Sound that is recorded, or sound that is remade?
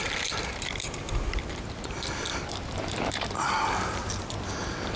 recorded